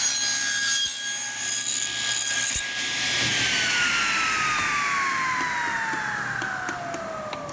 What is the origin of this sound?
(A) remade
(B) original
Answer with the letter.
B